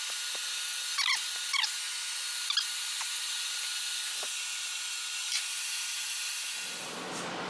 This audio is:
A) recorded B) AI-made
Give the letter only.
A